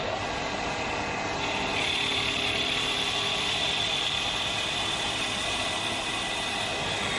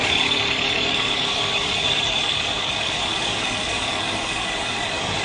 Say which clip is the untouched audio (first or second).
first